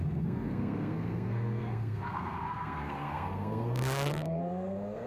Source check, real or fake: fake